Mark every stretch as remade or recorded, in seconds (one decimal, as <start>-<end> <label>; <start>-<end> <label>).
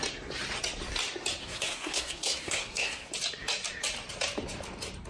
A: 0.0-1.4 recorded; 1.4-3.1 remade; 3.1-5.1 recorded